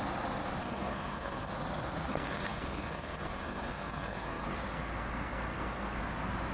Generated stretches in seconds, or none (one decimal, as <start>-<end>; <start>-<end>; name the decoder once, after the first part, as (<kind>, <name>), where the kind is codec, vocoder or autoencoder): 0.6-1.5 (codec, SNAC); 2.1-6.0